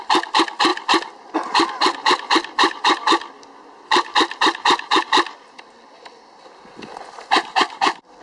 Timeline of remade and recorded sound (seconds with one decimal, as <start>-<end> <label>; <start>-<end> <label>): 0.0-0.7 recorded; 0.7-5.6 remade; 5.6-8.2 recorded